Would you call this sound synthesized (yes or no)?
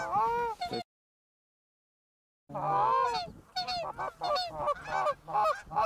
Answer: no